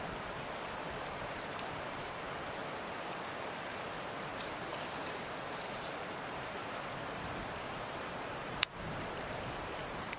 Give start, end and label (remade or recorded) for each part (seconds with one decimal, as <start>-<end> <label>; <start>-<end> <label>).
0.0-2.6 remade; 2.6-3.6 recorded; 3.6-4.3 remade; 4.3-5.5 recorded; 5.5-10.2 remade